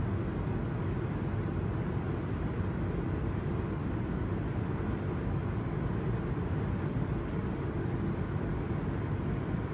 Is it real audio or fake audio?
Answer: real